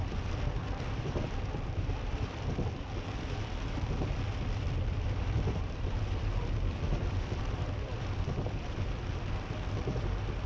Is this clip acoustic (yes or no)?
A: no